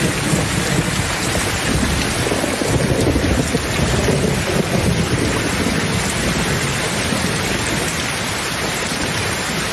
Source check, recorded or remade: recorded